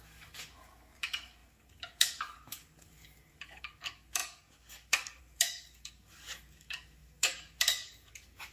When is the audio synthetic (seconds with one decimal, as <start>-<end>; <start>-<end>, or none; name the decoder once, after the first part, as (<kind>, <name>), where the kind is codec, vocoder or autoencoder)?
0.0-8.5 (codec, DAC)